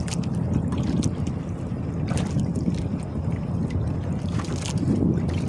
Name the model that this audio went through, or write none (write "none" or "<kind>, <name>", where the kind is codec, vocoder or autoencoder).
none